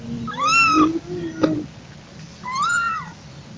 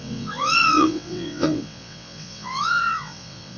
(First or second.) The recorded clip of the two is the first